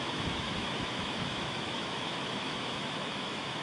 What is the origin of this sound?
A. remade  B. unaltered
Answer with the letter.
A